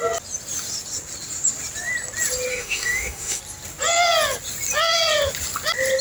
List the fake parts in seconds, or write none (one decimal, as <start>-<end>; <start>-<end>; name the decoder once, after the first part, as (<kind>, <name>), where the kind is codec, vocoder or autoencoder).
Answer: 2.5-3.4 (autoencoder, DAC-VAE)